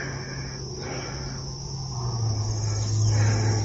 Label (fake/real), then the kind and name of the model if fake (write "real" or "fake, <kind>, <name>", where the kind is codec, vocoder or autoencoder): real